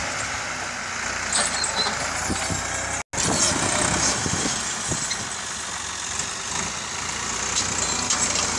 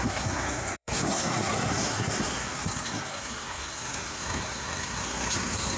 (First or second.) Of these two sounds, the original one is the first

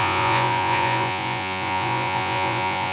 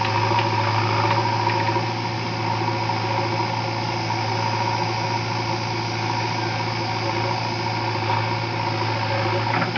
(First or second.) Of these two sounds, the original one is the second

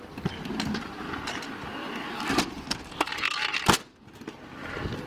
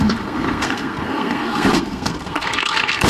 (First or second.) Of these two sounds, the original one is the first